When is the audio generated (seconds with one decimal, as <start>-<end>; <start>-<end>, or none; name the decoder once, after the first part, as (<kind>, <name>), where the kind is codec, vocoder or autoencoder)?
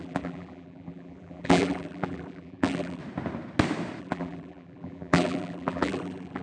0.0-3.0 (vocoder, BigVGAN v2); 4.0-6.4